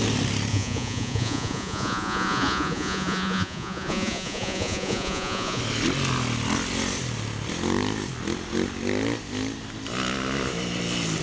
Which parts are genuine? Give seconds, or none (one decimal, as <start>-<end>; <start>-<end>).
0.0-0.5; 5.6-11.2